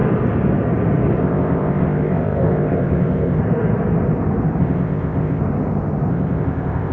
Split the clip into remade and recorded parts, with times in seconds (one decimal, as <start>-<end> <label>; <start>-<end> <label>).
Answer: 0.0-1.2 recorded; 1.2-3.4 remade; 3.4-4.6 recorded; 4.6-5.4 remade; 5.4-6.1 recorded; 6.1-6.9 remade